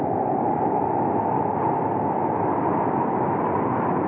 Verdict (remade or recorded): recorded